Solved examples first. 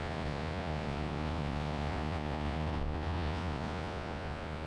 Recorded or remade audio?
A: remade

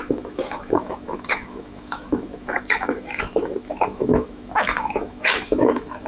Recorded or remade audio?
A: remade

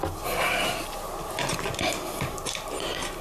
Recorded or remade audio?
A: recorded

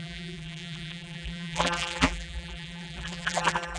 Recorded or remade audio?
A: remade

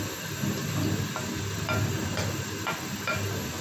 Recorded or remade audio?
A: recorded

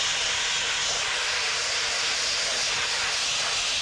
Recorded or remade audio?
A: recorded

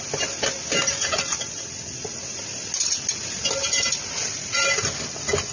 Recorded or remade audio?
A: recorded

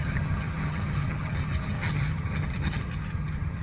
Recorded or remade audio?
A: remade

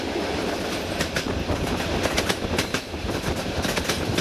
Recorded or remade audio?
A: recorded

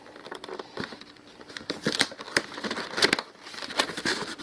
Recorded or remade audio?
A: remade